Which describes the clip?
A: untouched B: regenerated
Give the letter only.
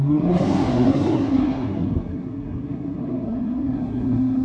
B